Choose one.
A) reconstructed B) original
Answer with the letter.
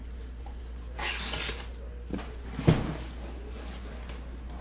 B